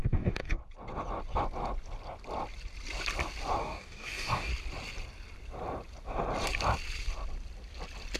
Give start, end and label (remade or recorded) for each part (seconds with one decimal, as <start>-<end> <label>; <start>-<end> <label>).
0.0-0.6 remade; 0.6-3.6 recorded; 3.6-4.5 remade; 4.5-8.2 recorded